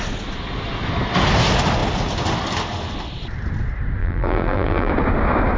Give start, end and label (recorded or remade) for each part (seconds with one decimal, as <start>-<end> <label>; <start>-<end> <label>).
0.0-4.0 recorded; 4.0-4.9 remade; 4.9-5.6 recorded